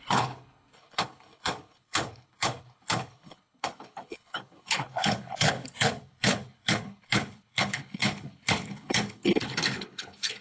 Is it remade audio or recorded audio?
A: remade